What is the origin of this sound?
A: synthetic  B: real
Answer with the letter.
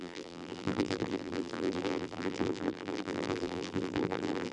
A